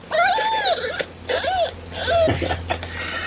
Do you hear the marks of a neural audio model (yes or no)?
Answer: no